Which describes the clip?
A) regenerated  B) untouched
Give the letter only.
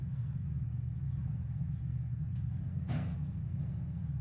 A